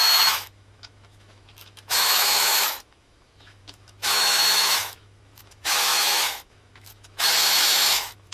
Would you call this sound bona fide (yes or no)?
no